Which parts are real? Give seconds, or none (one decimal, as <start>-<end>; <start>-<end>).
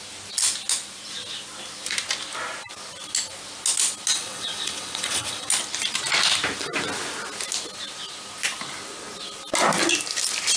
0.0-4.1; 5.5-10.6